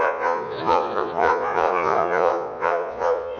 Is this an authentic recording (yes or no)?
no